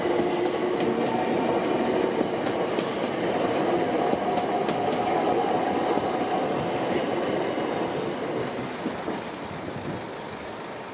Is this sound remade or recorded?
recorded